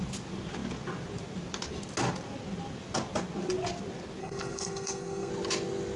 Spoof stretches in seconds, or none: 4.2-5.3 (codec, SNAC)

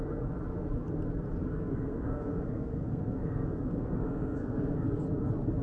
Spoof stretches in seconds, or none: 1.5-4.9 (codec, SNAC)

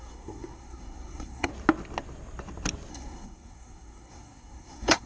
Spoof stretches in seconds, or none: 0.0-1.5 (codec, SNAC); 2.9-5.1

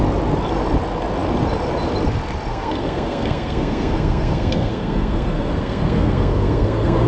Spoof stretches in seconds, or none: 2.5-7.1 (codec, SNAC)